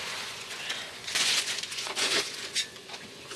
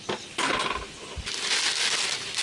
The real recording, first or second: second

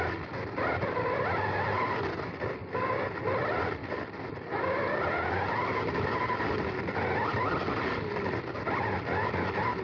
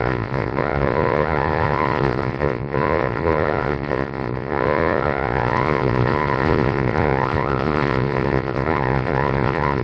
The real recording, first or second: first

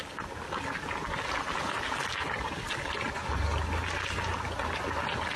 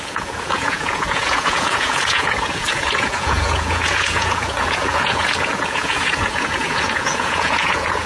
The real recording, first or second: first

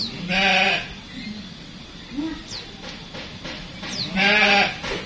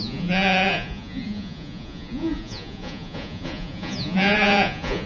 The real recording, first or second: first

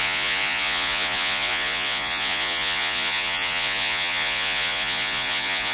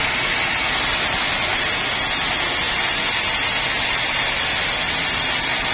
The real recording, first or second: second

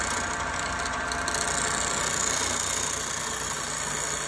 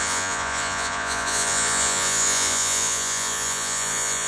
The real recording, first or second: first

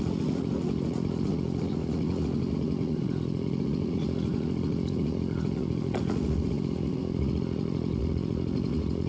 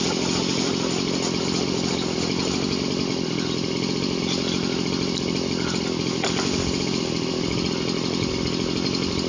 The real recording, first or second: second